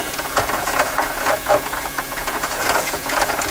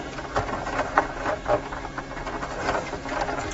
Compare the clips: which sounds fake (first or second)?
first